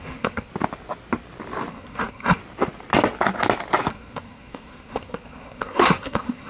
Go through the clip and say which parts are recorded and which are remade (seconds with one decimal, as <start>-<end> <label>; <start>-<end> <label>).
0.0-0.5 remade; 0.5-1.7 recorded; 1.7-2.4 remade; 2.4-3.9 recorded; 3.9-6.5 remade